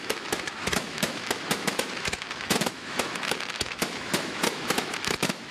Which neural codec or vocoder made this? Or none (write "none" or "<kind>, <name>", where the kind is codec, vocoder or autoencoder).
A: autoencoder, DAC-VAE